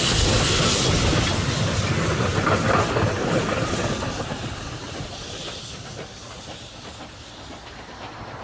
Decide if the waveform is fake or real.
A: real